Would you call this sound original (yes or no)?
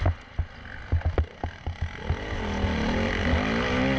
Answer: yes